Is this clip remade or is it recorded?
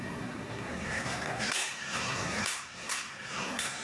remade